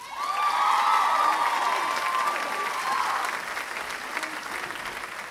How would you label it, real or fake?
real